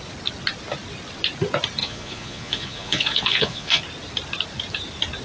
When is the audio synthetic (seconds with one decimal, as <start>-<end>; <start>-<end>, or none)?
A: 1.8-3.8